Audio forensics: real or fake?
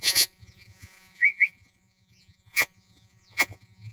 fake